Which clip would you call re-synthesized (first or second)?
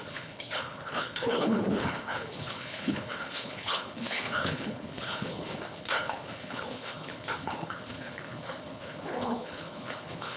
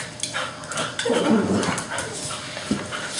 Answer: first